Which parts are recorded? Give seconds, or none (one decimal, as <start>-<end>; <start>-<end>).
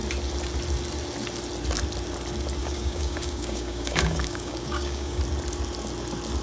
0.0-2.6; 5.2-6.4